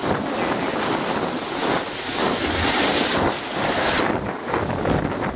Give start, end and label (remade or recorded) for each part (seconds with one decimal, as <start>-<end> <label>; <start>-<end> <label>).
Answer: 0.0-5.4 recorded